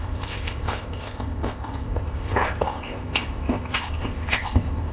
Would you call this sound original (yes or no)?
no